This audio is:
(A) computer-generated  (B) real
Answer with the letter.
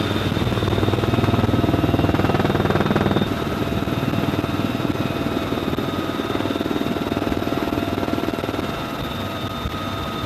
B